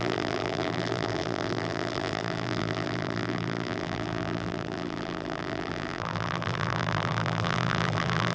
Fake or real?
fake